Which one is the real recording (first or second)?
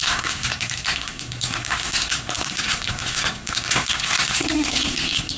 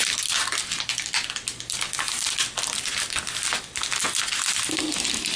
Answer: second